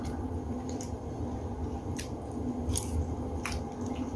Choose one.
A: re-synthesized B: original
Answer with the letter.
B